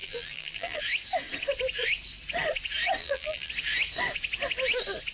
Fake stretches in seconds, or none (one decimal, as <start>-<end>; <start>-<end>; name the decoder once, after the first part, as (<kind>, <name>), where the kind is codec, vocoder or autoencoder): 0.0-0.8 (vocoder, BigVGAN v2); 3.0-3.5